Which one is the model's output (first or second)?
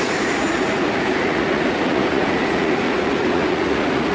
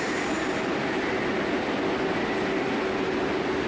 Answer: first